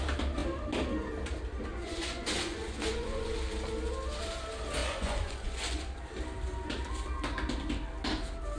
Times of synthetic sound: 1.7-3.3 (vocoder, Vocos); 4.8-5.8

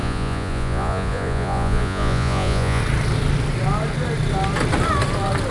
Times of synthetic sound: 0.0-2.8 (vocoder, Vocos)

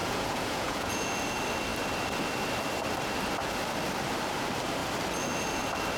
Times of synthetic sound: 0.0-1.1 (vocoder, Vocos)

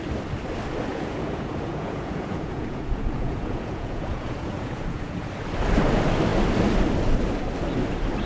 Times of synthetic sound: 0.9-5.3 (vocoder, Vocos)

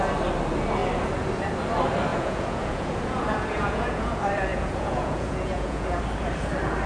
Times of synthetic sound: 2.1-4.1 (vocoder, Vocos); 4.5-6.0